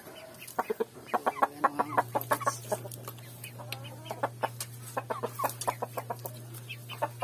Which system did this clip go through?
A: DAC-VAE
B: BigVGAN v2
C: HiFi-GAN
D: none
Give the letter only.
D